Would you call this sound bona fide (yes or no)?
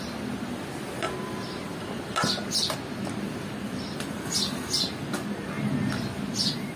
yes